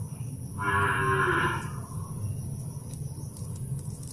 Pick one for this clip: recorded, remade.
recorded